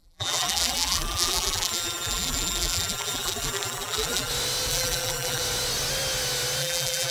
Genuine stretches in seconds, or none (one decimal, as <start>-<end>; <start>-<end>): 4.3-4.7; 5.4-6.6